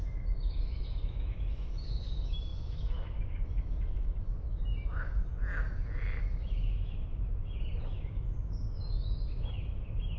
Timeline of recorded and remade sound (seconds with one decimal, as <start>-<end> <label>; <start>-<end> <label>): 0.0-5.3 remade; 5.3-6.2 recorded; 6.2-10.2 remade